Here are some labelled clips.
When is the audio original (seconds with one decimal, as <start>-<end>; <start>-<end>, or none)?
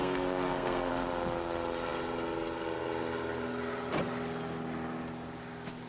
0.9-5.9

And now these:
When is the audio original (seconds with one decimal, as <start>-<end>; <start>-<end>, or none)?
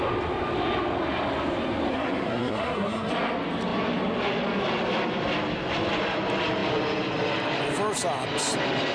0.0-1.9; 3.1-8.9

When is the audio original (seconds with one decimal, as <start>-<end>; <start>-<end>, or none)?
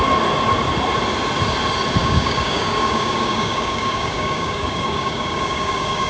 0.0-2.0